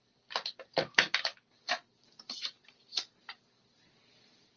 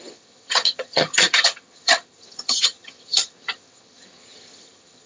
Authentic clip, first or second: first